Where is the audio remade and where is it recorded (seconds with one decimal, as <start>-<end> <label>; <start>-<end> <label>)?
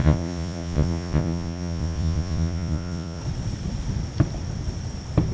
0.0-3.2 remade; 3.2-5.3 recorded